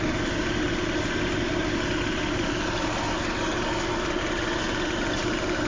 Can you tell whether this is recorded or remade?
recorded